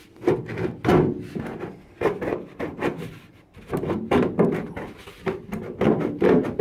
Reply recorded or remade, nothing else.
recorded